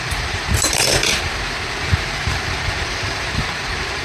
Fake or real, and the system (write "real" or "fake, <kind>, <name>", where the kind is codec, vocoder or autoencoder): fake, vocoder, BigVGAN v2